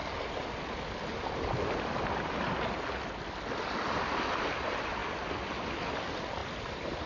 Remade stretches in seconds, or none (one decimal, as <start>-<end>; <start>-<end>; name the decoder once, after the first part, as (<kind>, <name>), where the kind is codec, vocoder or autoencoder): none